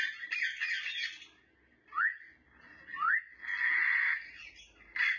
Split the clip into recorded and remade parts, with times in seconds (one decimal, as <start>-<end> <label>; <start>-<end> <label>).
0.0-5.2 recorded

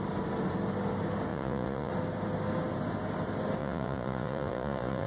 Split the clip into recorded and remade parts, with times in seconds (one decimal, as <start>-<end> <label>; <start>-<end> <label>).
0.0-1.3 recorded; 1.3-1.9 remade; 1.9-3.6 recorded; 3.6-5.1 remade

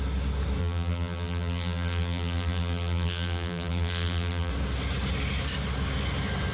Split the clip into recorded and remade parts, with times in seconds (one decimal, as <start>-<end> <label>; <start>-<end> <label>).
0.0-0.6 recorded; 0.6-4.5 remade; 4.5-6.5 recorded

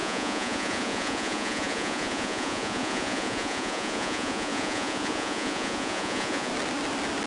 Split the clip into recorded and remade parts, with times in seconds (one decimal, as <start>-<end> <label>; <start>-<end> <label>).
0.0-6.5 remade; 6.5-7.3 recorded

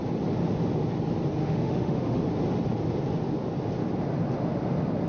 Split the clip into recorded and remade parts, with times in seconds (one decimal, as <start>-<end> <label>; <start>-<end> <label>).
0.0-1.4 recorded; 1.4-2.2 remade; 2.2-5.1 recorded

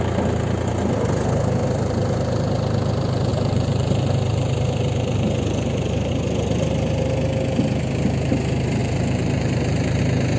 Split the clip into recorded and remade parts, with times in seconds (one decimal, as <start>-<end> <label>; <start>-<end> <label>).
0.0-1.6 recorded; 1.6-2.3 remade; 2.3-3.3 recorded; 3.3-6.1 remade; 6.1-8.8 recorded; 8.8-10.0 remade; 10.0-10.4 recorded